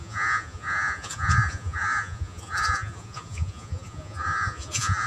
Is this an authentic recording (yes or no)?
no